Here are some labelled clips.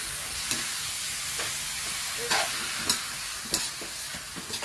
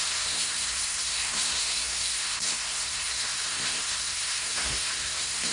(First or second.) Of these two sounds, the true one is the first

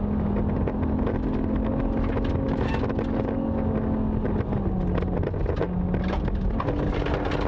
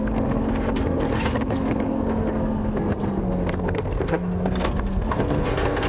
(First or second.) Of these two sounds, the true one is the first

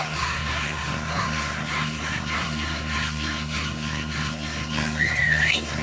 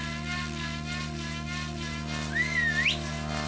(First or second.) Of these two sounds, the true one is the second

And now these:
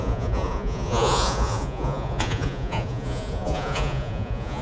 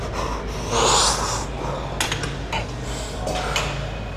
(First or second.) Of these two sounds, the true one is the second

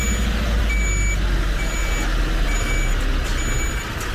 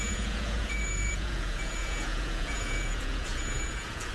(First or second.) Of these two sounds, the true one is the first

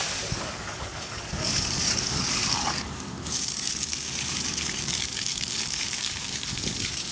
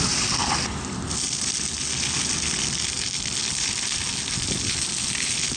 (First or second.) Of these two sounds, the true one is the second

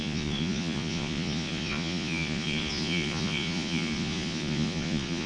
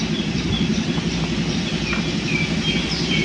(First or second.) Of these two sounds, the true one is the second